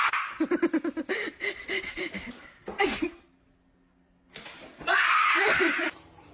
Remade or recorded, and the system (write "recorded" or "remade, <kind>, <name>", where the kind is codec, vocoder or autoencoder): recorded